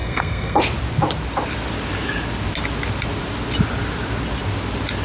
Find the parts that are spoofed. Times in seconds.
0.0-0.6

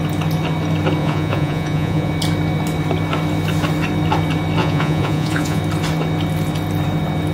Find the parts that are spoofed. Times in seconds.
1.0-2.1; 4.6-5.6

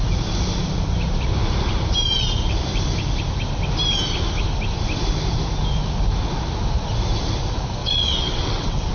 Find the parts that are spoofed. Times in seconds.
7.8-8.9

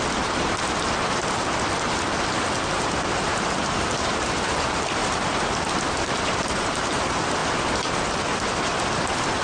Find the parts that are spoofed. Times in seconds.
5.0-7.0; 7.4-8.4

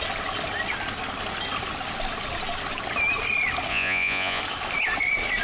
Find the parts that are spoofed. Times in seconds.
3.7-4.4